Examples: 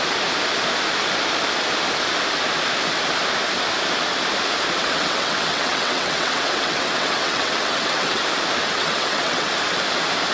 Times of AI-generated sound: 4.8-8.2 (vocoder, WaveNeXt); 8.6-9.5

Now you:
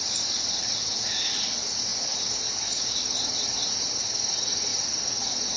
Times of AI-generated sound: none